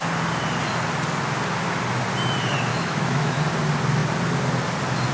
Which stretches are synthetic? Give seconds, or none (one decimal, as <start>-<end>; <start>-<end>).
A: 2.7-3.4